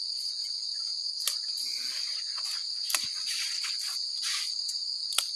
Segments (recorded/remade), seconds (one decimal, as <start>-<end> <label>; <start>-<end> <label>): 0.0-0.9 remade; 0.9-4.1 recorded; 4.1-4.7 remade; 4.7-5.4 recorded